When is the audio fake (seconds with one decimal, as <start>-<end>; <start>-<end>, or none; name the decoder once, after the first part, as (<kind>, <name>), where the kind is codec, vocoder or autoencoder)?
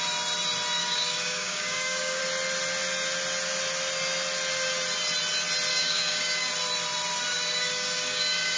0.8-2.2 (codec, DAC); 5.7-6.5; 7.3-8.6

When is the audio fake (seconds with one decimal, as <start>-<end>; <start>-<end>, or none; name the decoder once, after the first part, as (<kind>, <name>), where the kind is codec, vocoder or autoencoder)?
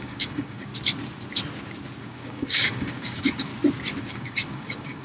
0.0-0.7 (codec, DAC); 2.0-3.5; 4.0-5.0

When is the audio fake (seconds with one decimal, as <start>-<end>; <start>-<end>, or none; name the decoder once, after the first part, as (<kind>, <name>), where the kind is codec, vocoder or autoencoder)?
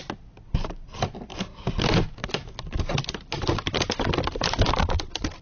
none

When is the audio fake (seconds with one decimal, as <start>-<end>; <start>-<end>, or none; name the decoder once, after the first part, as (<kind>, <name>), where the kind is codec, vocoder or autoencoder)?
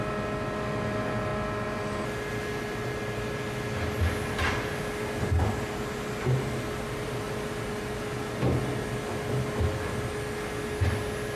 none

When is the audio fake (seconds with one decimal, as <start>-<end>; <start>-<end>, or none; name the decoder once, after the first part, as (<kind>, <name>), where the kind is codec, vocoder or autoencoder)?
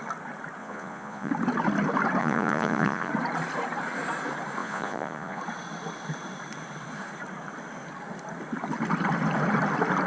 0.6-1.3 (vocoder, Vocos); 2.2-3.1; 4.6-5.4